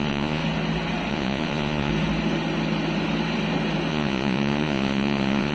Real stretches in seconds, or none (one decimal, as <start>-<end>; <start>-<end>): 0.4-1.1; 1.9-3.9